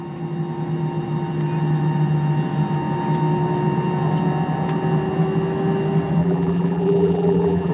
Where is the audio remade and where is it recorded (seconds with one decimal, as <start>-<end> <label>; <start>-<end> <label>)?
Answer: 0.0-6.2 recorded; 6.2-7.7 remade